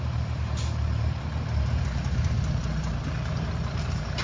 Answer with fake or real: fake